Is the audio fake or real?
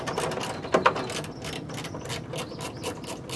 real